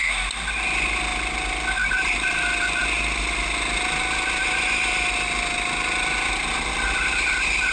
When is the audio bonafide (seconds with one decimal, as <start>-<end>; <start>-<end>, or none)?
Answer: 0.0-7.7